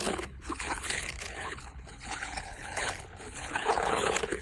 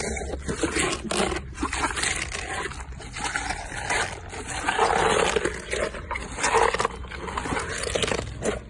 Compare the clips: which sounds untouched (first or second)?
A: second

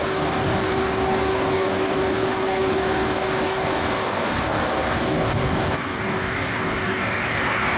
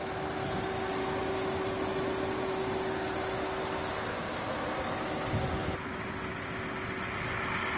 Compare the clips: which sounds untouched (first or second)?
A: second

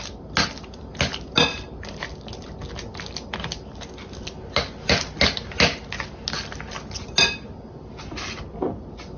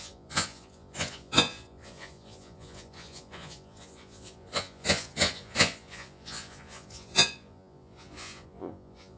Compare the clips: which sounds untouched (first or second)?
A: first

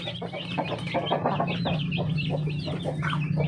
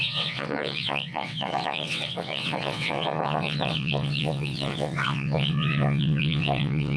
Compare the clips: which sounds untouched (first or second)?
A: first